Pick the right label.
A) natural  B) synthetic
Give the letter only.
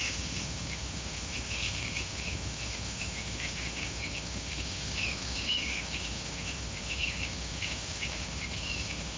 B